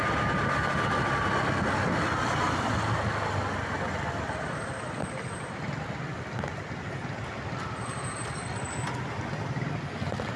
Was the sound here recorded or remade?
recorded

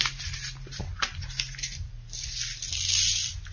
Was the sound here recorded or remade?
recorded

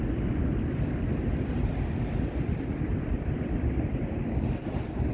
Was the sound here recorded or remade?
recorded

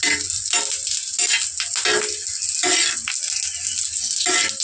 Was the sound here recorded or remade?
recorded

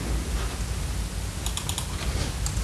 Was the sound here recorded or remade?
recorded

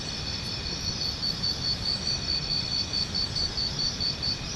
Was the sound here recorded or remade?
recorded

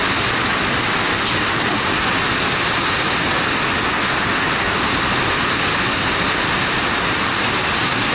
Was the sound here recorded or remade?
recorded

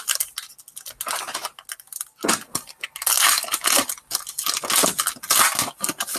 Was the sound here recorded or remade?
recorded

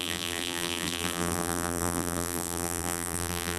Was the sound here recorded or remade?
remade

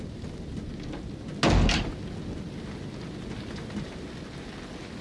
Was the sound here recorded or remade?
recorded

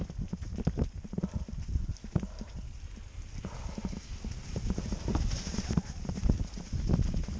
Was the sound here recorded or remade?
recorded